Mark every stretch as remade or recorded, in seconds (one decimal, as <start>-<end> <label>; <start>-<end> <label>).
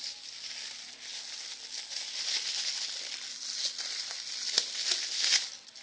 0.0-5.8 recorded